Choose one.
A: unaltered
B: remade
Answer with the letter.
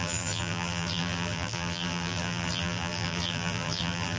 B